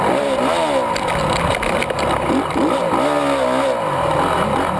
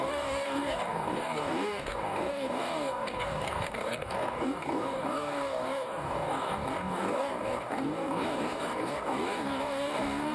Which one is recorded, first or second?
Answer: first